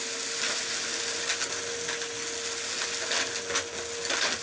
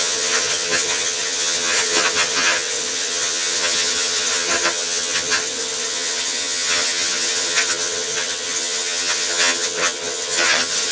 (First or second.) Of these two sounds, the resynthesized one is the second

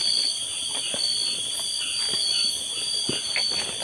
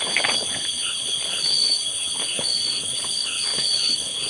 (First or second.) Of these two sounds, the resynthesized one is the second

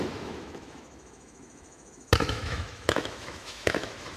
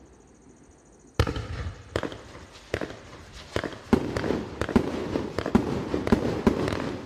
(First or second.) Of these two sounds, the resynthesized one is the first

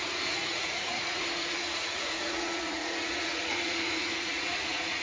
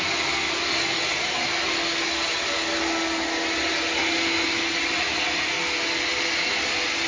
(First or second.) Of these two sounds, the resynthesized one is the first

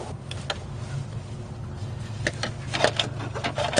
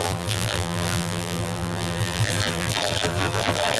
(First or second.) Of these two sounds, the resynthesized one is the second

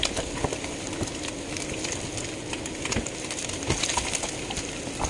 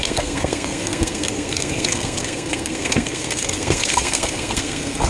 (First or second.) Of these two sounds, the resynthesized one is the second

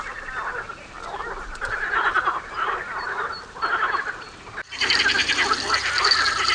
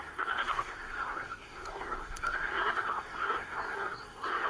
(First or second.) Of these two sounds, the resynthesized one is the second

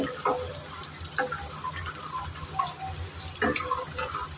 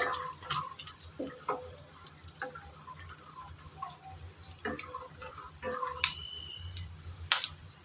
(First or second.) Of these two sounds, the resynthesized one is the second